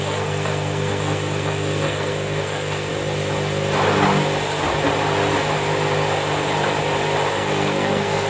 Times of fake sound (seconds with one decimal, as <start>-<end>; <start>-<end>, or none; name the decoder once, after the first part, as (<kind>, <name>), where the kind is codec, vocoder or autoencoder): 0.0-2.9 (codec, SNAC); 7.3-8.3